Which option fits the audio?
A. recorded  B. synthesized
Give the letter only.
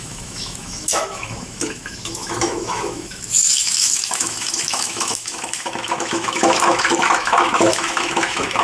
B